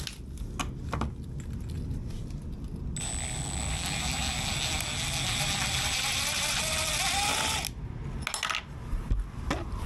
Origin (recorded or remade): recorded